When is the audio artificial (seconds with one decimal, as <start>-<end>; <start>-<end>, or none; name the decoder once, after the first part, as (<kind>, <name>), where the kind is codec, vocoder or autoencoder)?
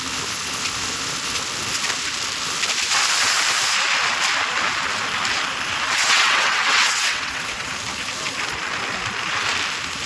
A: 6.0-7.7 (vocoder, WaveNeXt)